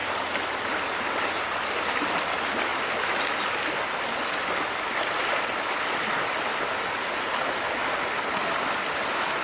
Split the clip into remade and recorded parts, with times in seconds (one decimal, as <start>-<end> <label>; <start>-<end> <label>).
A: 0.0-9.4 recorded

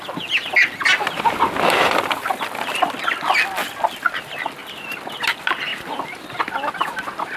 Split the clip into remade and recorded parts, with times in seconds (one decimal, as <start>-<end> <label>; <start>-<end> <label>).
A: 0.0-7.4 recorded

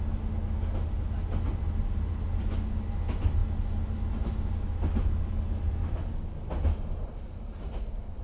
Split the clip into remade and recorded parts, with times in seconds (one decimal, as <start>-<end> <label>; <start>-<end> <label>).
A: 0.0-8.2 recorded

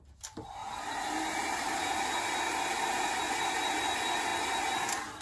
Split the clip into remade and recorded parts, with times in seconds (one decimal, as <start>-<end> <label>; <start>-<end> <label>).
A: 0.0-0.6 recorded; 0.6-3.7 remade; 3.7-5.2 recorded

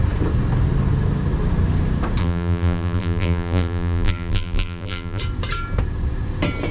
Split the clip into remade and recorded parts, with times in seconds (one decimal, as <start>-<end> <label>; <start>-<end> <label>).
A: 0.0-2.2 recorded; 2.2-5.2 remade; 5.2-6.7 recorded